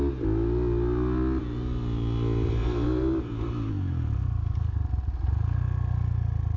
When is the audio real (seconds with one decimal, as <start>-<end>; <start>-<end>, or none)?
0.0-2.6; 3.7-6.6